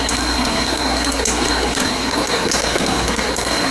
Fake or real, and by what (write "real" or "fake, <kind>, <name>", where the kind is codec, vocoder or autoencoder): fake, codec, SNAC